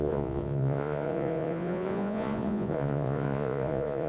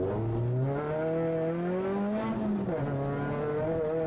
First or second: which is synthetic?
first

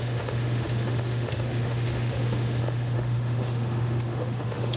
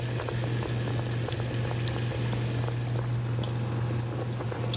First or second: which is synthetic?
first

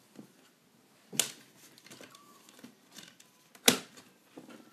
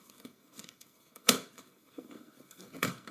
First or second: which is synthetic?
second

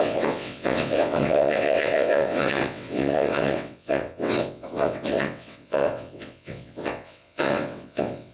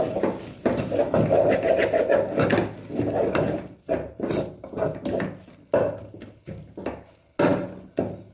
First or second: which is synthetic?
first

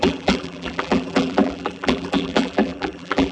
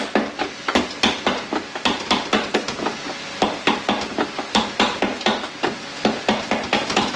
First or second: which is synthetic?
first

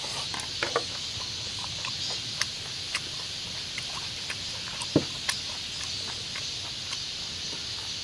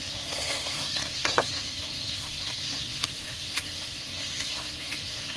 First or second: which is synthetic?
second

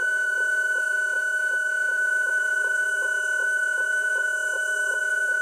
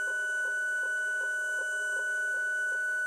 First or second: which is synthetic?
first